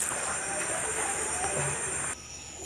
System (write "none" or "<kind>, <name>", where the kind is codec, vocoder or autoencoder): none